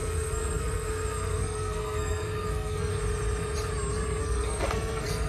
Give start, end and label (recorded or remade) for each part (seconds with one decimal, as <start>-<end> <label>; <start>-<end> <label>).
0.0-2.9 remade; 2.9-4.2 recorded; 4.2-5.3 remade